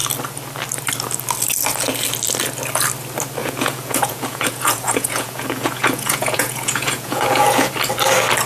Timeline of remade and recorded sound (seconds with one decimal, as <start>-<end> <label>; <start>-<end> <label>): 0.0-3.4 recorded; 3.4-7.7 remade; 7.7-8.5 recorded